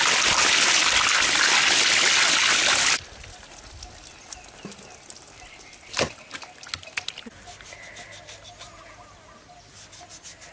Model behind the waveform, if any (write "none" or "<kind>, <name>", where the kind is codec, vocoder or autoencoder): none